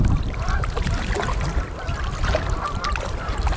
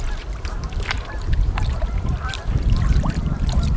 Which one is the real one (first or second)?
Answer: first